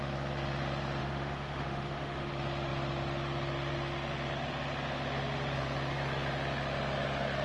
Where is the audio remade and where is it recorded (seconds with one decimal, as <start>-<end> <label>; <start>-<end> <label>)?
0.0-1.0 recorded; 1.0-2.3 remade; 2.3-7.4 recorded